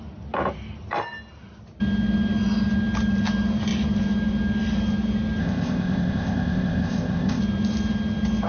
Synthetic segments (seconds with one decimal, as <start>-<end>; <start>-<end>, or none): 5.4-7.4